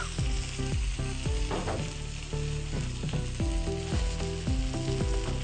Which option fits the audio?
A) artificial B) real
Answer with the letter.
B